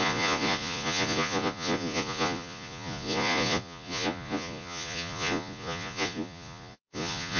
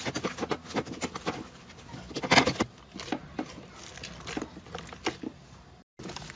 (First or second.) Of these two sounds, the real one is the second